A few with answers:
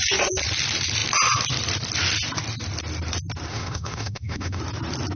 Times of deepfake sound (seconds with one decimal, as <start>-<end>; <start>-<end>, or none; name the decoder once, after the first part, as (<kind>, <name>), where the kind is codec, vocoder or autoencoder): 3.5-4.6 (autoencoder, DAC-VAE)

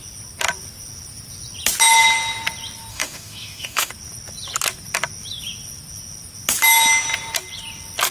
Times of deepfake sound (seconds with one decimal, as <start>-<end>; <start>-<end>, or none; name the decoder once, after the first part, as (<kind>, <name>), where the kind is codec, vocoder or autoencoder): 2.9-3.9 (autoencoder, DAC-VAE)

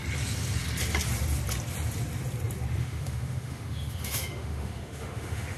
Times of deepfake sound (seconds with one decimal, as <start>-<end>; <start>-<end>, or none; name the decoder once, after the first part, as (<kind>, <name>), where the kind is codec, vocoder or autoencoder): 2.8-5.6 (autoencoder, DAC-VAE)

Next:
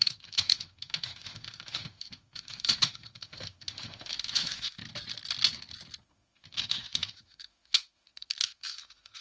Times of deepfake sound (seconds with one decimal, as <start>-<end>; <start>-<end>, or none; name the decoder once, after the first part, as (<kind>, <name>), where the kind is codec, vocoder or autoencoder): 0.0-4.8 (autoencoder, DAC-VAE); 6.0-9.2